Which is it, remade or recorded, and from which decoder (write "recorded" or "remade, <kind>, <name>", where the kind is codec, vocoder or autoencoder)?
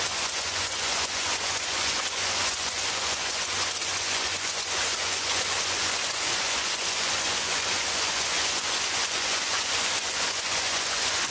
remade, vocoder, Vocos